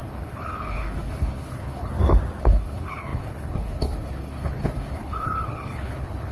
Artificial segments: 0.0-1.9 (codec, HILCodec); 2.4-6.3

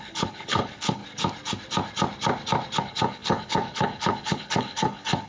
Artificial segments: 0.0-1.0 (codec, HILCodec); 2.8-5.3

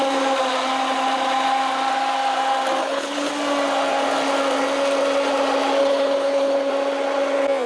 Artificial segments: 2.8-3.3 (codec, HILCodec); 5.8-6.7